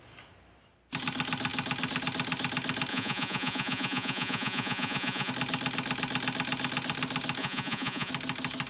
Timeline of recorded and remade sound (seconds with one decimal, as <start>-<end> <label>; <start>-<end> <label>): 0.0-2.9 recorded; 2.9-5.3 remade; 5.3-7.4 recorded; 7.4-8.1 remade; 8.1-8.7 recorded